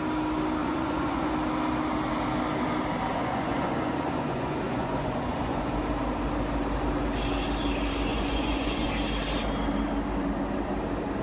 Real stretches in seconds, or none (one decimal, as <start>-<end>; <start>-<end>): 0.0-0.6; 1.3-3.1; 5.8-8.1; 8.9-11.2